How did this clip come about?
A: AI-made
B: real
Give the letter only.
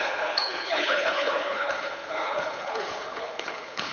A